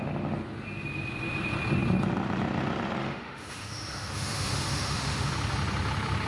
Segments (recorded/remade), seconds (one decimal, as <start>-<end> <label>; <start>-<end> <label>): 0.0-3.0 recorded; 3.0-5.3 remade; 5.3-6.3 recorded